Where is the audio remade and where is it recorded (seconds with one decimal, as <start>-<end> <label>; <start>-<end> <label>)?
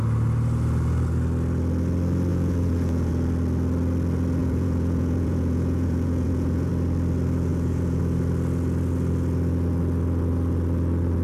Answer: 0.0-2.3 recorded; 2.3-3.1 remade; 3.1-4.4 recorded; 4.4-6.7 remade; 6.7-7.5 recorded; 7.5-8.0 remade; 8.0-11.2 recorded